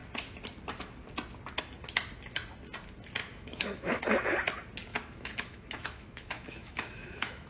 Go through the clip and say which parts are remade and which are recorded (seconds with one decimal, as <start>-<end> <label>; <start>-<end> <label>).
0.0-3.2 recorded; 3.2-4.0 remade; 4.0-4.9 recorded; 4.9-7.5 remade